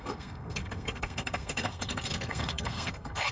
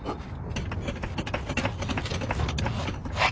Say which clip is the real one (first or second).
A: second